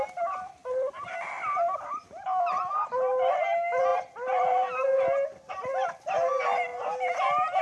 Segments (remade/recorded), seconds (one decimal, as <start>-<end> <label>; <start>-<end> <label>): 0.0-7.6 recorded